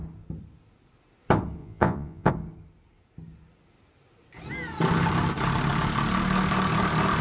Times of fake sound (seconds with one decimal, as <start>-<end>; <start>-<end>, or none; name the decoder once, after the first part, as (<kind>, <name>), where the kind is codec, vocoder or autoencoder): 1.6-2.3 (vocoder, Vocos)